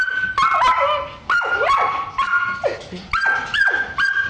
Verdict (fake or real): real